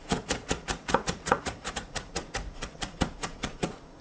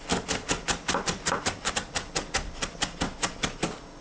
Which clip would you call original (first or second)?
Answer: second